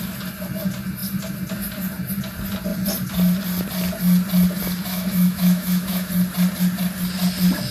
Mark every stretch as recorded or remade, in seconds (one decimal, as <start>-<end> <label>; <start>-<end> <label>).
0.0-4.9 recorded; 4.9-6.1 remade; 6.1-7.7 recorded